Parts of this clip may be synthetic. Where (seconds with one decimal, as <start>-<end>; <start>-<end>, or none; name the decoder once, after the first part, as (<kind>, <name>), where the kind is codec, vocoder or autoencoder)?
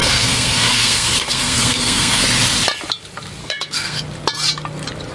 0.0-2.2 (codec, SNAC); 3.4-4.0